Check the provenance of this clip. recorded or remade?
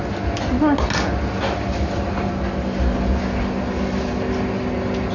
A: recorded